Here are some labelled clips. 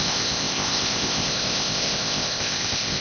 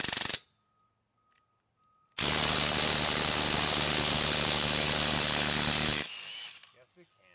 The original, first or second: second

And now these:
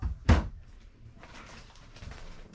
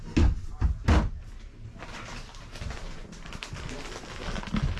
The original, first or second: second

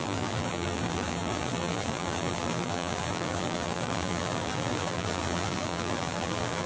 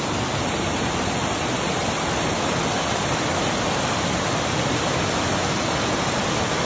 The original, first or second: second